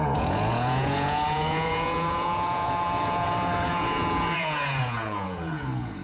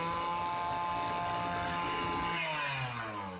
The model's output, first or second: first